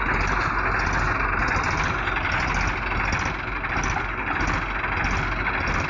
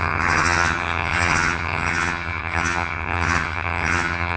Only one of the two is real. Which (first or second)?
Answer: first